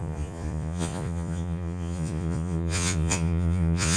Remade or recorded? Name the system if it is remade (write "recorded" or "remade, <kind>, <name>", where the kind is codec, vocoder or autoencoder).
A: remade, vocoder, Vocos